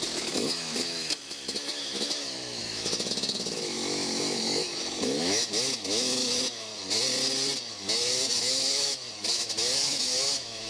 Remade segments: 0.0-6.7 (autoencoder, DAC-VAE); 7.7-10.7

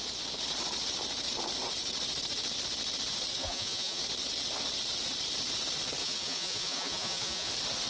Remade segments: 3.3-4.0 (vocoder, Vocos); 6.0-7.5

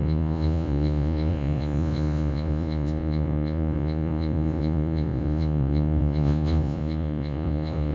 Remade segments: 0.0-7.9 (vocoder, Vocos)

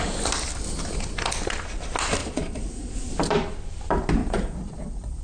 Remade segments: 2.2-2.9 (vocoder, Vocos); 4.2-5.2